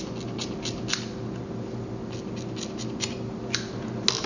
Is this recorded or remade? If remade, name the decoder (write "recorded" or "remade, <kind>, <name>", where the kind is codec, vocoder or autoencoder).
recorded